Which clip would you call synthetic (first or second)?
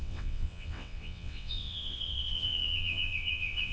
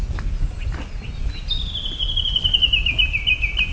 first